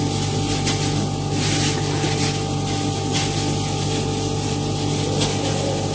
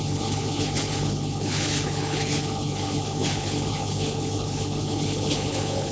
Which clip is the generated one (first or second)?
second